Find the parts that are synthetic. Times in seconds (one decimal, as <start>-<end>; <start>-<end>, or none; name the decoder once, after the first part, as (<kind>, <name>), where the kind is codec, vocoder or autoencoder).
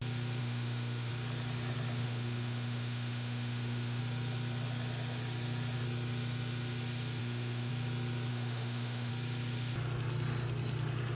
0.4-1.1 (autoencoder, DAC-VAE); 2.0-4.0; 7.2-7.7; 8.3-9.1